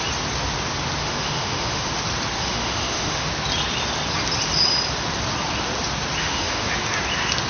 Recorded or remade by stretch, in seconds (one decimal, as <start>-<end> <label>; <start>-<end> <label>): 0.0-1.0 recorded; 1.0-1.9 remade; 1.9-2.4 recorded; 2.4-3.3 remade; 3.3-6.2 recorded; 6.2-6.7 remade; 6.7-7.5 recorded